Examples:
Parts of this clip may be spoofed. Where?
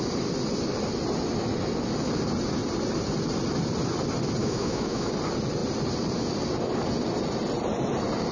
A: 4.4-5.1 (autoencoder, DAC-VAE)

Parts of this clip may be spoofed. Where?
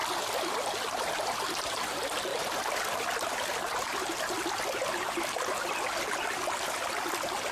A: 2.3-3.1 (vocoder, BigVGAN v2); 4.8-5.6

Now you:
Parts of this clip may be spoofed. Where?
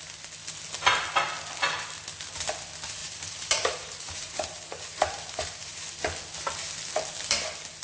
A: 3.0-6.0 (vocoder, BigVGAN v2)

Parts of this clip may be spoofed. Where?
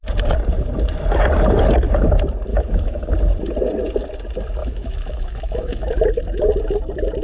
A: 2.5-3.1 (autoencoder, DAC-VAE); 4.6-5.9